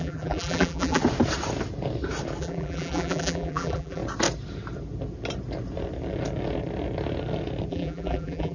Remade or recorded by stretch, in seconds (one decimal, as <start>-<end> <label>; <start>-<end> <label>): 0.0-1.0 remade; 1.0-2.4 recorded; 2.4-4.0 remade; 4.0-7.7 recorded; 7.7-8.5 remade